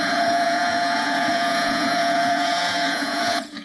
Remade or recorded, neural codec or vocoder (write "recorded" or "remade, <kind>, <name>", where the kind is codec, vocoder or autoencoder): remade, vocoder, Vocos